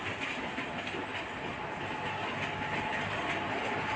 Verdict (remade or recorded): recorded